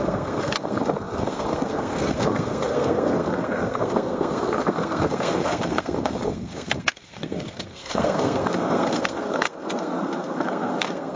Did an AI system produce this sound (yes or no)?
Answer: yes